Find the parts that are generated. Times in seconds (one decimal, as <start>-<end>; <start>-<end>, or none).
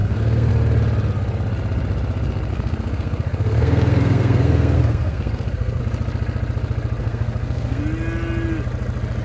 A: 0.0-0.5; 2.5-5.8; 7.0-7.8